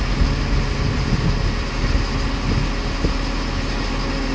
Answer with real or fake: real